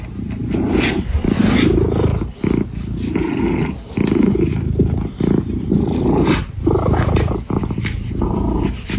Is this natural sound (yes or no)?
yes